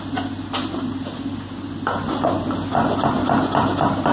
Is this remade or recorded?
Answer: recorded